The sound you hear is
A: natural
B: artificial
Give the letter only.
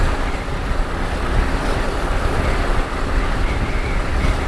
A